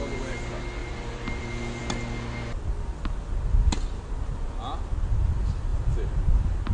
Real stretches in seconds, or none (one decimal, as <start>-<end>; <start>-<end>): 0.0-0.8; 1.4-5.7